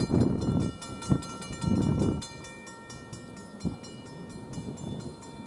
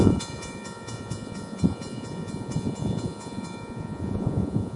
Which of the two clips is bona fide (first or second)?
first